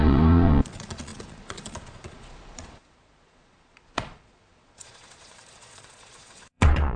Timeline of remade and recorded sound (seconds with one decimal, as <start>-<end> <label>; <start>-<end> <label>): 0.0-7.0 remade